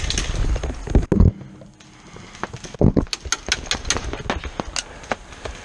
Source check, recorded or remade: recorded